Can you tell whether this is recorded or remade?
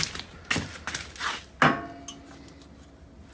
recorded